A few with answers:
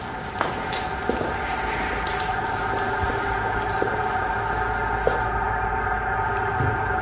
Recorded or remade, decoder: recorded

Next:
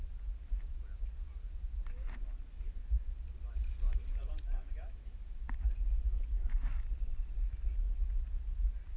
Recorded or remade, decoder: recorded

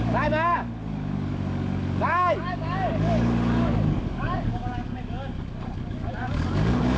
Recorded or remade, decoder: remade, codec, DAC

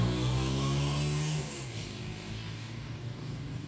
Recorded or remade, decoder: remade, codec, DAC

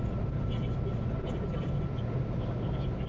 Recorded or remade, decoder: recorded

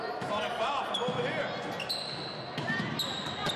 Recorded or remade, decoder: recorded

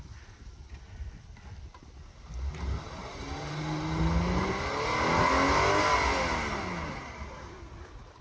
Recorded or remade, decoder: recorded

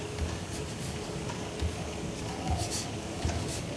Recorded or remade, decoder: remade, codec, DAC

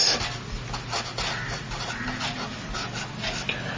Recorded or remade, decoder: recorded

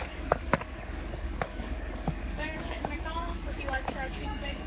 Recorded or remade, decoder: remade, codec, DAC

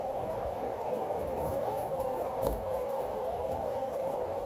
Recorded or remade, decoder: remade, codec, DAC